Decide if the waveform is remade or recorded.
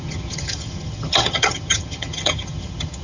remade